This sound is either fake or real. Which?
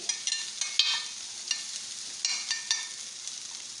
real